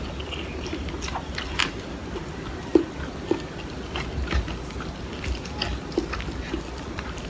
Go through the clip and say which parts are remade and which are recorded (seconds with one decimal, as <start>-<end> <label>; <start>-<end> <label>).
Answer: 0.0-7.3 recorded